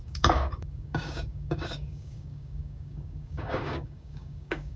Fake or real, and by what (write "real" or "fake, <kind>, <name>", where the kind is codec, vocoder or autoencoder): fake, codec, DAC